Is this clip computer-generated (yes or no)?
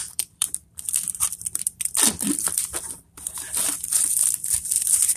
yes